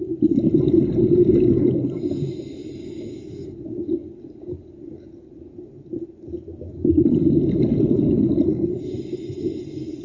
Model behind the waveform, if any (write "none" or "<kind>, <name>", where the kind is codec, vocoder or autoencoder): none